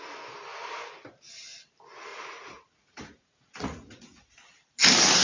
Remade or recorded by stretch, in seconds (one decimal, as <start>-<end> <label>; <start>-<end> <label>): 0.0-2.1 recorded; 2.1-4.3 remade; 4.3-5.2 recorded